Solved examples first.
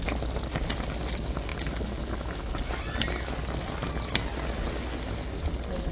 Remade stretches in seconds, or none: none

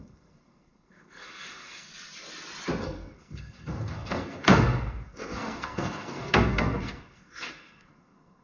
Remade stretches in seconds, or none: 0.0-1.9 (codec, SNAC); 2.8-8.4

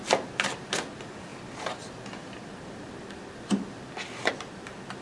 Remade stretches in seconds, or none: none

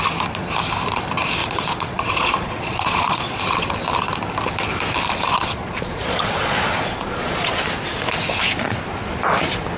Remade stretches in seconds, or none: 1.4-3.4 (vocoder, Vocos); 5.3-7.6

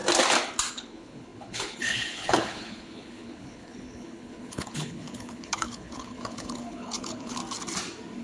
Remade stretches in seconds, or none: 0.7-7.4 (codec, HILCodec)